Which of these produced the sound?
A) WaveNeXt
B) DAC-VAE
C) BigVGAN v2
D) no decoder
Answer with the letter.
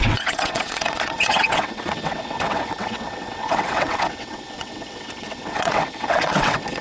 A